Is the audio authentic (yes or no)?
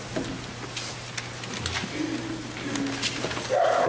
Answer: yes